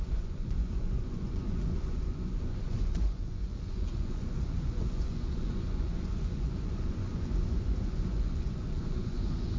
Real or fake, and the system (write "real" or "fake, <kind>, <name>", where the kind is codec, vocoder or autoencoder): fake, vocoder, Vocos